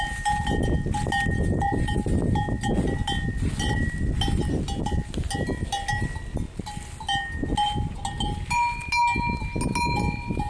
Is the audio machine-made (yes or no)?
no